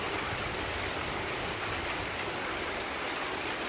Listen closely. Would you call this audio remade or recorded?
recorded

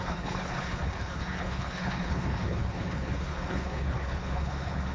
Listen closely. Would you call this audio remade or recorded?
remade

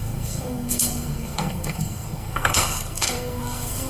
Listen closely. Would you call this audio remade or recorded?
remade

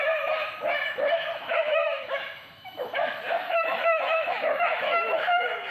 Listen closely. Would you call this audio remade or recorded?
remade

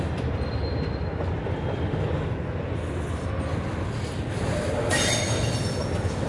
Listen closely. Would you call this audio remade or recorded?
recorded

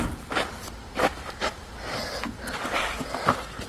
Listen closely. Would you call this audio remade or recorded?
recorded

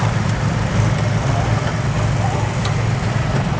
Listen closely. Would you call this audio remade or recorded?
recorded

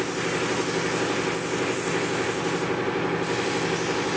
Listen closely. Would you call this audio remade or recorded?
recorded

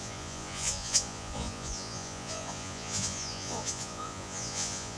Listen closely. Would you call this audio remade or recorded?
remade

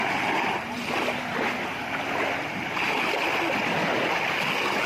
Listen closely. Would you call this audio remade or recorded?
recorded